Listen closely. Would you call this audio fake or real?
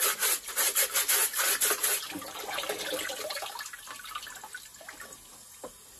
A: real